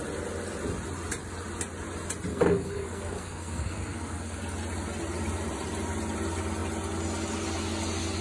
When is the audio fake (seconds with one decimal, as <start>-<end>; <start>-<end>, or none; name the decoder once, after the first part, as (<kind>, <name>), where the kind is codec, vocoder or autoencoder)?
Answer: 2.3-4.4 (codec, SNAC)